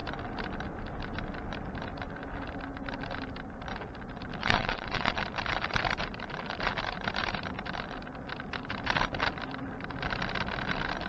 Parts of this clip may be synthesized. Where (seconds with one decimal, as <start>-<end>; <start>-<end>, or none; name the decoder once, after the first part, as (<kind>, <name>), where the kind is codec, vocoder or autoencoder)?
4.4-5.2 (vocoder, WaveNeXt)